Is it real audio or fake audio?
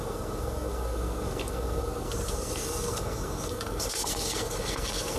fake